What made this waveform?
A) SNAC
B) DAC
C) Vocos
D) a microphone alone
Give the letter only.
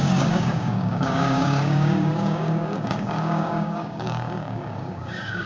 B